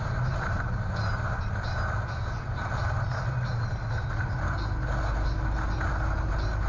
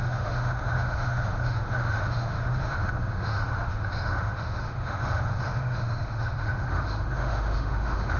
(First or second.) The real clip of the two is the first